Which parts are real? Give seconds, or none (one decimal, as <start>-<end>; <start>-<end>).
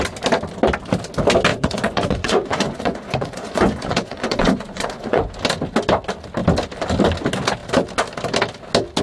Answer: 0.0-1.5; 5.3-9.0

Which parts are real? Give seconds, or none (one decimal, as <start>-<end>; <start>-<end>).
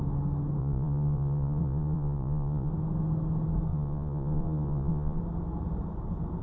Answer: 0.0-0.6; 2.7-3.7; 5.2-6.4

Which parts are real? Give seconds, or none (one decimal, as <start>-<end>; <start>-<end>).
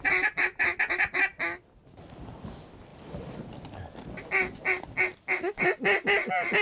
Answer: 0.0-6.6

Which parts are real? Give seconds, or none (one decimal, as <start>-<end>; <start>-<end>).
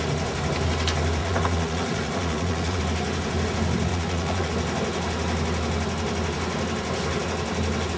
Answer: 0.0-1.2; 2.8-3.9; 4.5-8.0